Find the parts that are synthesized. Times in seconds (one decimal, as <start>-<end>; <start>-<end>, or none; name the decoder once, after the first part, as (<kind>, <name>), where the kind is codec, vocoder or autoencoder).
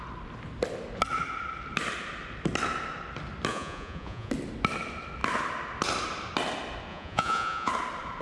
3.5-4.3 (vocoder, Vocos); 6.9-7.7